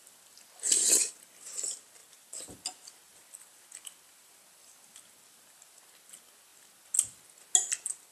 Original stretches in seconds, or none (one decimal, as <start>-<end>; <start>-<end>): 0.0-2.0; 2.6-8.1